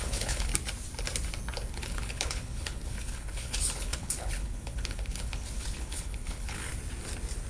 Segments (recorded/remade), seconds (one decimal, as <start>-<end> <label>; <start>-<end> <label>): 0.0-0.5 remade; 0.5-1.7 recorded; 1.7-6.7 remade; 6.7-7.5 recorded